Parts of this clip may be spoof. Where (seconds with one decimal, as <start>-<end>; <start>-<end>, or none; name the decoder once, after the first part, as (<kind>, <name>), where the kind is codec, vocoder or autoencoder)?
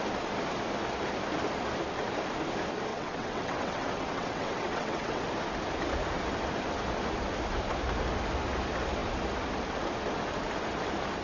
2.9-5.2 (vocoder, WaveNeXt)